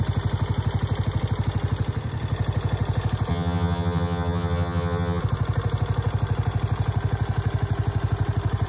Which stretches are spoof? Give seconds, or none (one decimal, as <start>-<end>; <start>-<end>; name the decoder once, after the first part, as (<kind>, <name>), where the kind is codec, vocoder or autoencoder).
3.3-5.2 (vocoder, HiFi-GAN)